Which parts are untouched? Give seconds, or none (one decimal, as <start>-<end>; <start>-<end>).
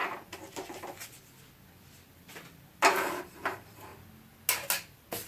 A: 0.0-3.2; 3.9-5.3